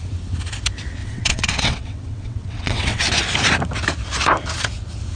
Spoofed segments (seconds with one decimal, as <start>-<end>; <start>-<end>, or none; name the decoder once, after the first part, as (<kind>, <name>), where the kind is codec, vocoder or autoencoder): 1.0-3.1 (vocoder, WaveNeXt)